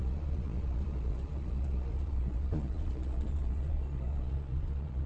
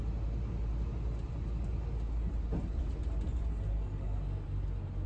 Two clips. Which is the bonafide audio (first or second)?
second